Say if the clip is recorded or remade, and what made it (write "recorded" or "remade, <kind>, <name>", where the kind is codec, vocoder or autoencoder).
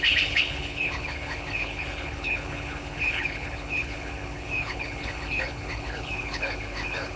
remade, codec, HILCodec